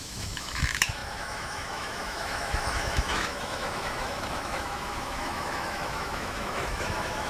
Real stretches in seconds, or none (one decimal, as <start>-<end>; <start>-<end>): none